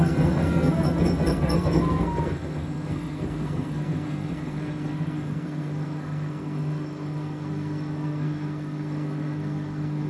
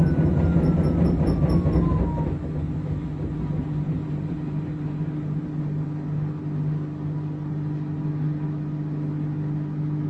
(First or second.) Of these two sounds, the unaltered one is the second